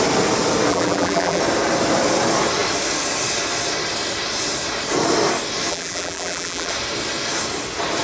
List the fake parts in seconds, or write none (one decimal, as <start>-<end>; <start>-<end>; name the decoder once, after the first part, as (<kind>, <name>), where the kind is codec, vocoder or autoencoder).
0.7-1.4 (vocoder, BigVGAN v2); 5.7-6.7